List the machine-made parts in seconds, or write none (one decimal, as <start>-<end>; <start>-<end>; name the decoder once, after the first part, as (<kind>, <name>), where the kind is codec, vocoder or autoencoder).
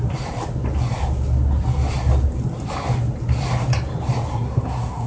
4.3-5.1 (codec, SNAC)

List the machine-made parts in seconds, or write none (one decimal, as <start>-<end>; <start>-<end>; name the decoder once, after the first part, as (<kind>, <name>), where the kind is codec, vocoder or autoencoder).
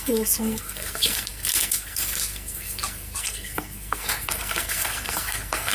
0.0-5.7 (codec, SNAC)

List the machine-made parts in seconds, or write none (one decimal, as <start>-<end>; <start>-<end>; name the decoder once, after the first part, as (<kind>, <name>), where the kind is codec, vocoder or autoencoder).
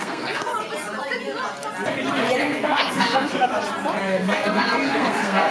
0.0-0.5 (codec, SNAC); 2.4-3.5; 4.0-5.5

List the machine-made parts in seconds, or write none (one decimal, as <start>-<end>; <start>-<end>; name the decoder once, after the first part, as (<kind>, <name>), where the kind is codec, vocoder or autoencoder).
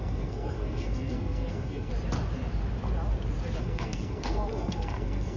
0.0-1.9 (codec, SNAC); 3.6-5.4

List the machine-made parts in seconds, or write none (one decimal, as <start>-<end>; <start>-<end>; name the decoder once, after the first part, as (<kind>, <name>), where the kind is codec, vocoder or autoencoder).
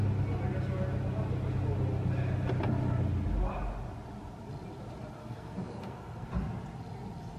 5.2-6.3 (codec, SNAC)